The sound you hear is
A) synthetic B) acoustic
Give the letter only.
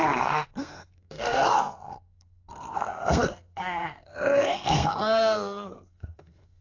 A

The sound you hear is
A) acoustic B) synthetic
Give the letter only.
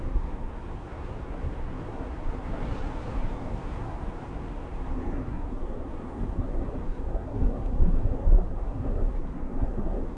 B